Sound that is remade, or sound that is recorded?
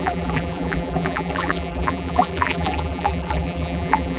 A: remade